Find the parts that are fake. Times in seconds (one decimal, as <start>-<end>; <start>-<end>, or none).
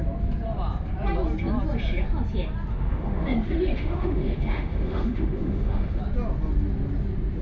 2.7-6.0